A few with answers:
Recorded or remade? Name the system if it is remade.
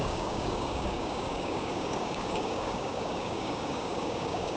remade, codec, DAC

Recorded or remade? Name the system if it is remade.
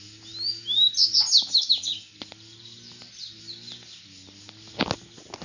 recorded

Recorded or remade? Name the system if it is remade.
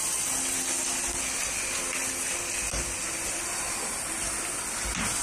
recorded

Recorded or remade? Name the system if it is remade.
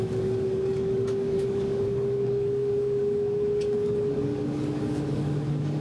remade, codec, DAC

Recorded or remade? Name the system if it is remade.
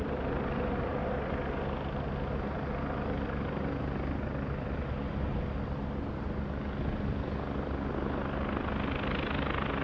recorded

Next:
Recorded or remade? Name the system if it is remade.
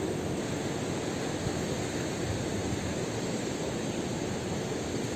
recorded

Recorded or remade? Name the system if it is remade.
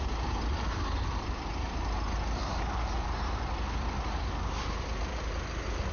recorded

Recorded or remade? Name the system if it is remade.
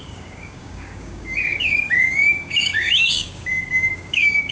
remade, codec, DAC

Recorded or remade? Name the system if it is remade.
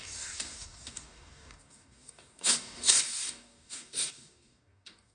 remade, codec, DAC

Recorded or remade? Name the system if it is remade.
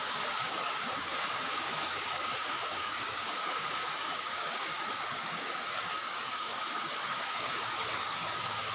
remade, codec, DAC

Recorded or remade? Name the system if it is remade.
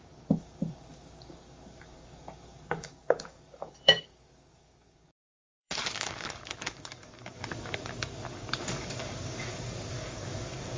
remade, codec, DAC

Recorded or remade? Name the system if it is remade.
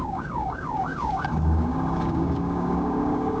remade, codec, DAC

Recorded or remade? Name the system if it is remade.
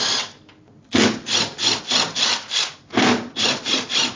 recorded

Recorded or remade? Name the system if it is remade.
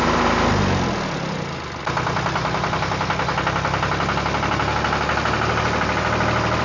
recorded